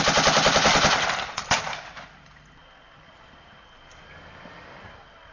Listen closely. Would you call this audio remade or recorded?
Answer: recorded